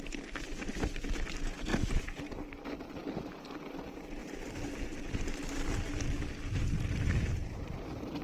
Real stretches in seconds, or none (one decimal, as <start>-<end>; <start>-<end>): 0.0-1.7; 2.3-3.0; 3.8-8.2